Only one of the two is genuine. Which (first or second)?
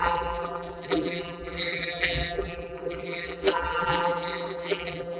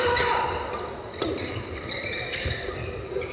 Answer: second